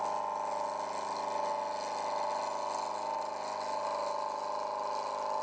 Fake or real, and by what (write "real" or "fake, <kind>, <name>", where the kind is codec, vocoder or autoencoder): real